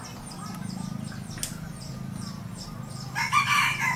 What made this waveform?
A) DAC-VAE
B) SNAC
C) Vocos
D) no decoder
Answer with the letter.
D